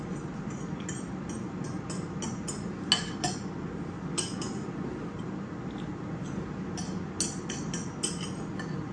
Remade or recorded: recorded